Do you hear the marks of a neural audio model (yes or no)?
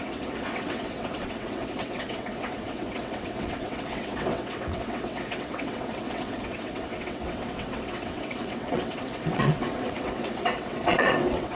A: yes